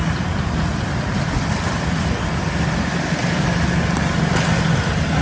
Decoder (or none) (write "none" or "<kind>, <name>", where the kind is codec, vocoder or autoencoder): none